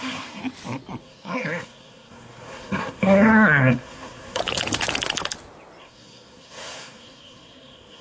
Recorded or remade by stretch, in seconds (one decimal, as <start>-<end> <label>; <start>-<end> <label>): 0.0-0.4 remade; 0.4-1.0 recorded; 1.0-4.4 remade; 4.4-5.8 recorded; 5.8-8.0 remade